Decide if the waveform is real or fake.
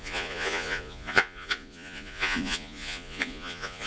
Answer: fake